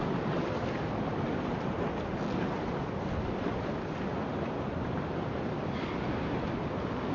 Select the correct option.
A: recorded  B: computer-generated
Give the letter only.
A